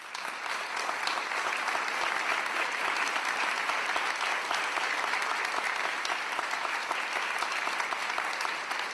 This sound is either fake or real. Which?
real